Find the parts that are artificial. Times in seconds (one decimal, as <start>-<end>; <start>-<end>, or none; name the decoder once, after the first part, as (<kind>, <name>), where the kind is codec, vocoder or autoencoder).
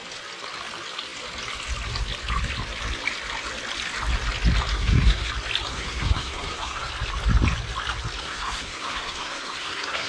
4.7-5.3 (codec, SNAC); 5.7-6.9; 8.2-10.1